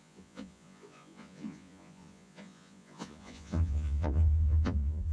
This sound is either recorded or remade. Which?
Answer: remade